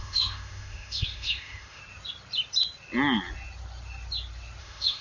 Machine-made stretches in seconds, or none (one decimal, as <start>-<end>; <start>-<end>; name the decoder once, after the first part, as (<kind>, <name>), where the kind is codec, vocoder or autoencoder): 0.0-1.8 (autoencoder, DAC-VAE); 4.6-5.0